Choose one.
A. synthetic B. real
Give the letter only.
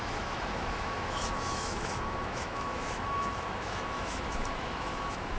A